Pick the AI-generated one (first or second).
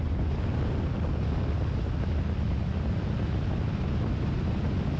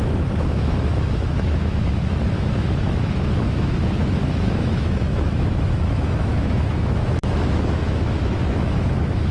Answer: second